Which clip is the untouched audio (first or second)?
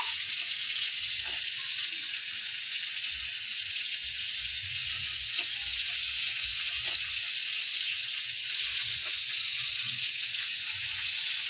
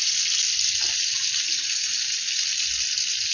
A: second